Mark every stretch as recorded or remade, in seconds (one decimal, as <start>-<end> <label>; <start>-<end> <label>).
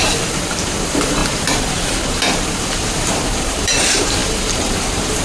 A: 0.0-5.2 remade